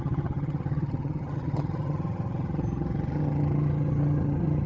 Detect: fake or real fake